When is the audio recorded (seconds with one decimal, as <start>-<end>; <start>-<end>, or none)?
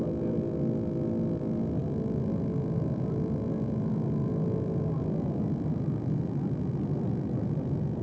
0.0-8.0